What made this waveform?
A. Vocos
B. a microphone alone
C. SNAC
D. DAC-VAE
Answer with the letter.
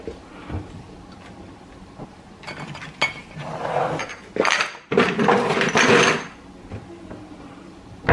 B